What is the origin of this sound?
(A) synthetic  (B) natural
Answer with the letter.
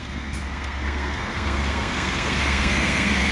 A